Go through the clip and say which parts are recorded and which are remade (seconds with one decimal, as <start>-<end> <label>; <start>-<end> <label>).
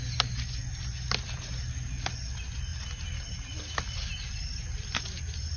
0.0-5.6 recorded